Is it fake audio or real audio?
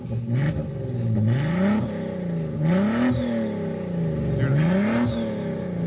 real